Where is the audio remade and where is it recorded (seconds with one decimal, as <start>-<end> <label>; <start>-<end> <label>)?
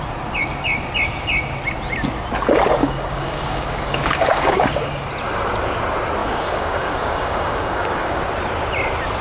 0.0-2.8 recorded; 2.8-4.9 remade; 4.9-6.2 recorded; 6.2-8.2 remade; 8.2-9.2 recorded